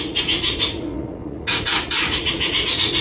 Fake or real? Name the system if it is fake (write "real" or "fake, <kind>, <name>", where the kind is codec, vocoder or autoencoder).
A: fake, vocoder, Vocos